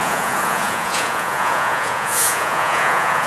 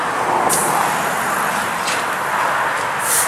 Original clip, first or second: second